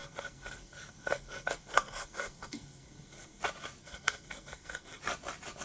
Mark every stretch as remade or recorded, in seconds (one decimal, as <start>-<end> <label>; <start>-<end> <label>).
0.0-3.4 remade; 3.4-3.8 recorded; 3.8-5.0 remade; 5.0-5.6 recorded